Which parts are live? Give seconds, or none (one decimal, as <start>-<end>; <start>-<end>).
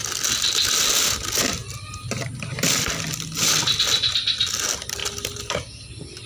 0.0-5.0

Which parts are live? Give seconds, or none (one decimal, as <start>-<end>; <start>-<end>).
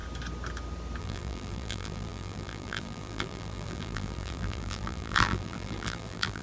0.0-1.0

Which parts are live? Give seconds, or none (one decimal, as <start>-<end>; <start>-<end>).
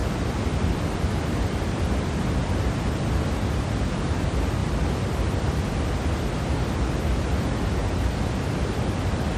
3.2-4.6; 5.9-7.8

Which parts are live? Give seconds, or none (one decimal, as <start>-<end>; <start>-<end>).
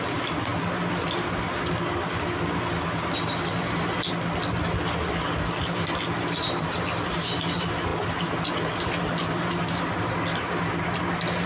0.0-11.5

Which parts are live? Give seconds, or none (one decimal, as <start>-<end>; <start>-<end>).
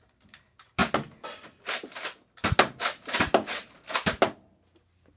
0.0-5.2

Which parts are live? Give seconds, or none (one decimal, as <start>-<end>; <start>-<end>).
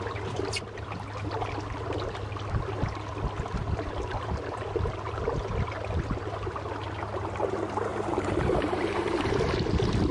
0.0-7.9; 9.3-10.1